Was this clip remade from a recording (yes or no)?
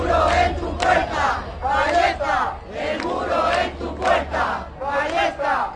no